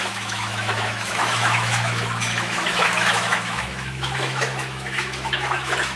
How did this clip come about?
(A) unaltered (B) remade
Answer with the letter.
B